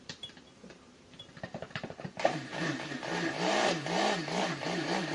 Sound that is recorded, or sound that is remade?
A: remade